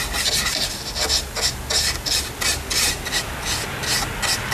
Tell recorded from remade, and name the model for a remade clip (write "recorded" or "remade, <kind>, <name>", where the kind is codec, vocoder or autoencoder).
recorded